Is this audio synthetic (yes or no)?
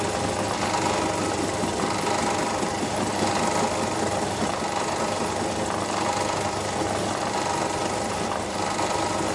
no